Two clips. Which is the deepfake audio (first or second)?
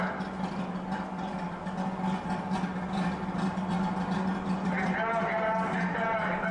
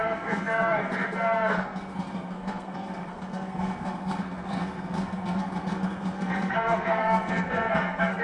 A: second